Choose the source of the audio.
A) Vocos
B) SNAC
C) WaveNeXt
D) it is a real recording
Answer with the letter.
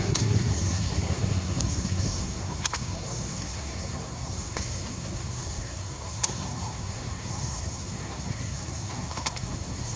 B